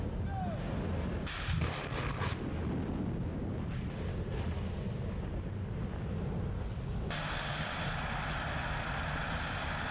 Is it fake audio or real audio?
real